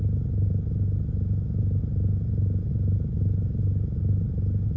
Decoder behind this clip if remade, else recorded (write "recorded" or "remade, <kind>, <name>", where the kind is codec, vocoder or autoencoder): recorded